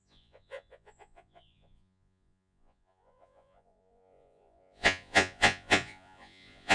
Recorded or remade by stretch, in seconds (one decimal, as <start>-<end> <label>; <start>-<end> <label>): 0.0-6.7 remade